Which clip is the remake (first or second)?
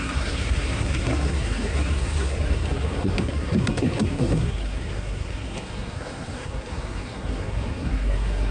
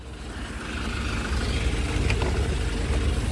first